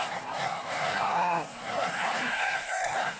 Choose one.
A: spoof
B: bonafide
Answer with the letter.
A